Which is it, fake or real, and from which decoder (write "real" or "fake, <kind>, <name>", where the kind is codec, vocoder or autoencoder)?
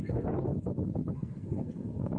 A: fake, codec, SNAC